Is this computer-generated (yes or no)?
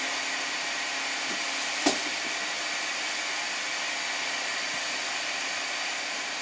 no